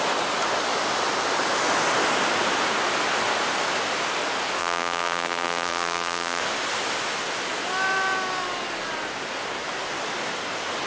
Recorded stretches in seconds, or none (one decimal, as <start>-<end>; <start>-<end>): 0.0-4.6; 6.4-10.9

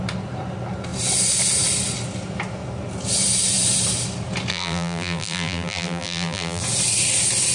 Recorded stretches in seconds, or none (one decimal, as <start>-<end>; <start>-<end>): 0.0-4.5; 6.6-7.5

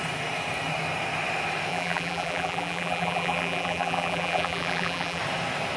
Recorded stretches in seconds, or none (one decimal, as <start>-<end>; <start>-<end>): 0.0-1.7; 5.2-5.8

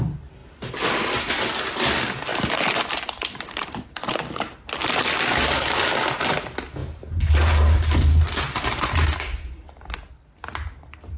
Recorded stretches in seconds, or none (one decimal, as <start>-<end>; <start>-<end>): 0.0-2.3; 4.5-11.2

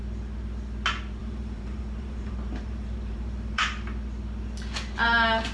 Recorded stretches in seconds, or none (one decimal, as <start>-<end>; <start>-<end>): 0.0-1.2; 3.6-5.5